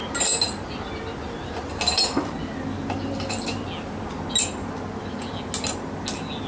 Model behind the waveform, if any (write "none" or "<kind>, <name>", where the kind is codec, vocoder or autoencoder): none